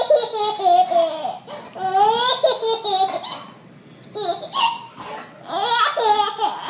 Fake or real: real